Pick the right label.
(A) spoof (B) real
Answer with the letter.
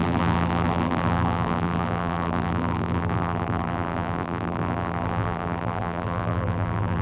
A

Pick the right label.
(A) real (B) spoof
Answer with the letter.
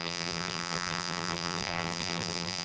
B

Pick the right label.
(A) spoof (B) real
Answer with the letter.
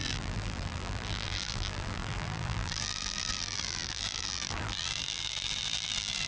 A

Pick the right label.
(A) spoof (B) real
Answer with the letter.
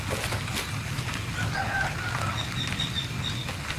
B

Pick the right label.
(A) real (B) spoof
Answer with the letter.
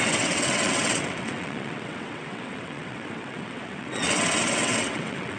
B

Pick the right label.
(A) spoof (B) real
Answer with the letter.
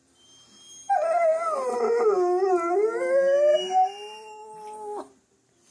B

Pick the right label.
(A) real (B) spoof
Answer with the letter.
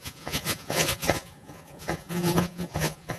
B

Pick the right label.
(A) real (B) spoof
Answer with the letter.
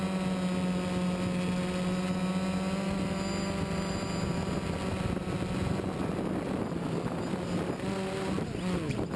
A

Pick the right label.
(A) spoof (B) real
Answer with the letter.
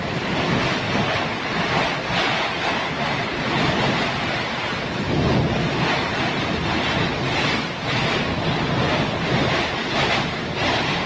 B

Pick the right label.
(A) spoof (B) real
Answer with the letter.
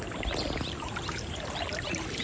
B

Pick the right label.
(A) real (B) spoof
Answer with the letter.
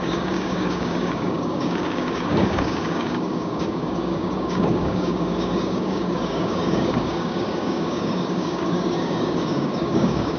B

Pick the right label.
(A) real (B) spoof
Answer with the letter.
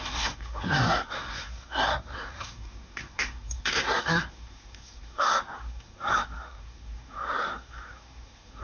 B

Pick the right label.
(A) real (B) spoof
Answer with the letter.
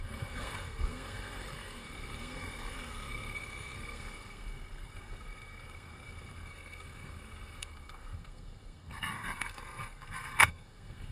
B